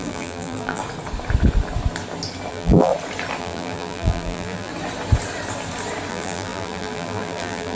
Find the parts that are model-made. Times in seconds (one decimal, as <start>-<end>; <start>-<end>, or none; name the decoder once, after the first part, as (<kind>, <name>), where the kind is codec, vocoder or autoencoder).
0.0-0.8 (vocoder, BigVGAN v2); 2.5-2.9; 3.4-4.7; 6.1-7.8

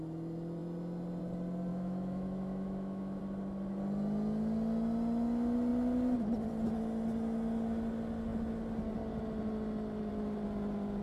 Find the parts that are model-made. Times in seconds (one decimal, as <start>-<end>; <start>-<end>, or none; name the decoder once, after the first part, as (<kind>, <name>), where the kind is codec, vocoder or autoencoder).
1.7-3.2 (autoencoder, DAC-VAE)